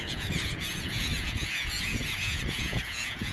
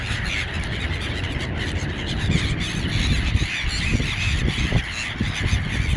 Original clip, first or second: second